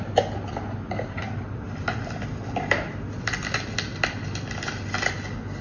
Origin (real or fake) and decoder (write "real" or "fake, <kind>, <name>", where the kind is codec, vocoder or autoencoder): real